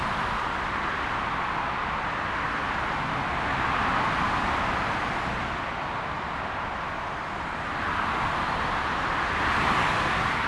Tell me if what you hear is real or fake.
real